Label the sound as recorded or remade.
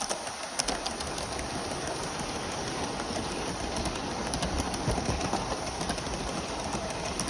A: recorded